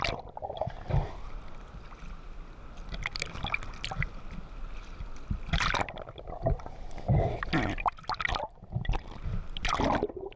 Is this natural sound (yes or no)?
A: yes